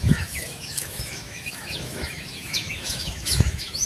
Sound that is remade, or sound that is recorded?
remade